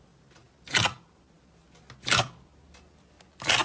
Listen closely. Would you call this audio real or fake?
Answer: real